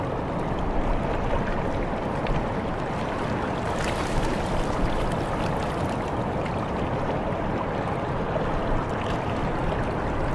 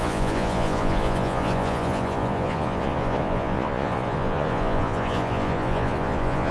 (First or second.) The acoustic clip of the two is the first